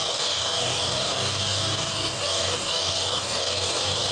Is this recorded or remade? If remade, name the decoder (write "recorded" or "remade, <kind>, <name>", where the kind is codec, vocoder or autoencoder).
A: remade, codec, DAC